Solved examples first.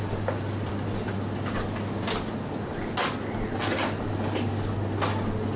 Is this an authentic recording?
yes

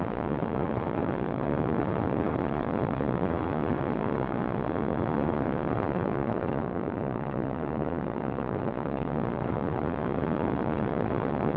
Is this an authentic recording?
no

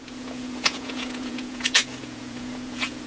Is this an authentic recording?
no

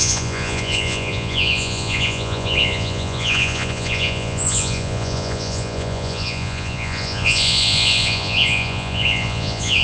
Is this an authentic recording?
no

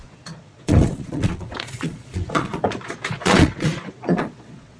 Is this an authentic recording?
no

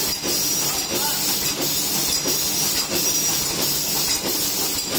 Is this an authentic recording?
yes